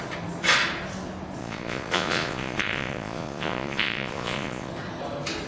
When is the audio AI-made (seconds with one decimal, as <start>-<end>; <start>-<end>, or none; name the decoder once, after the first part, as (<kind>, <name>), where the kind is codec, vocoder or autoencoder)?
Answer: 1.4-4.7 (vocoder, Vocos)